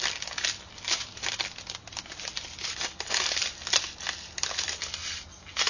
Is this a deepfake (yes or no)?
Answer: no